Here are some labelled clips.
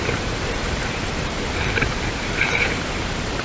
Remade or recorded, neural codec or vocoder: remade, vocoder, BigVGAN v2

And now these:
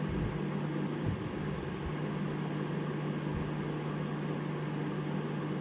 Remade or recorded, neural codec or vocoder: recorded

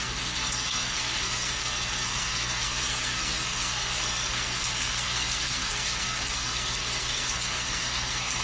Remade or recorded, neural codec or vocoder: remade, codec, SNAC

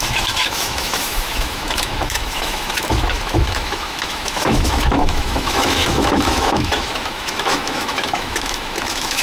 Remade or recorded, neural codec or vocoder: remade, autoencoder, DAC-VAE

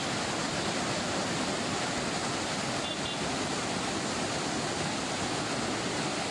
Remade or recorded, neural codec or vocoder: recorded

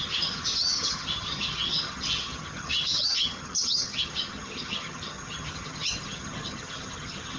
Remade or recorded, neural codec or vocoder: remade, vocoder, HiFi-GAN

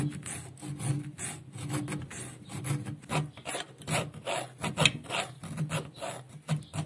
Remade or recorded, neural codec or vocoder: recorded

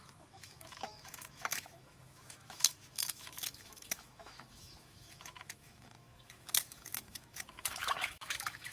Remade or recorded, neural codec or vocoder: remade, autoencoder, DAC-VAE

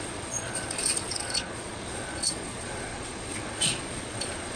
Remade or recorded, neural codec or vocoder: remade, vocoder, Vocos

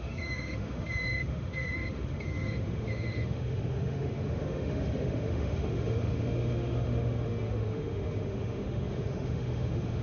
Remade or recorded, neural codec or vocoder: remade, autoencoder, DAC-VAE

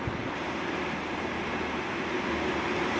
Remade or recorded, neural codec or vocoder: recorded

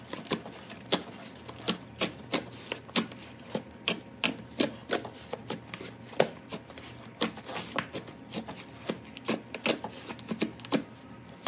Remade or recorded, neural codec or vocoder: recorded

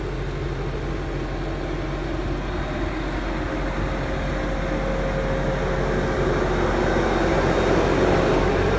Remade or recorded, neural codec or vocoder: recorded